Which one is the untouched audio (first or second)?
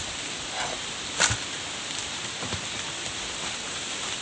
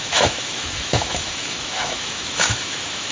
first